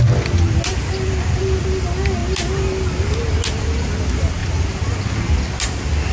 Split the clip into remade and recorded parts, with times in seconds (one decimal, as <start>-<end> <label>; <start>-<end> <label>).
0.0-6.1 recorded